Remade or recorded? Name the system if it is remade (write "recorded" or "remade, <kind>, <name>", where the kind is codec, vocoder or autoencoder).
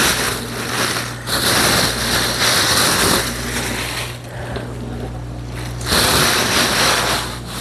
recorded